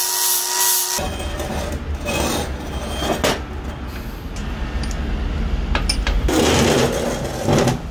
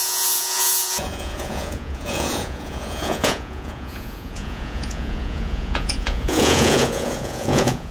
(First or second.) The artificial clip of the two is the second